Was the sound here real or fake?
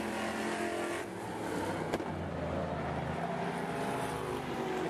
real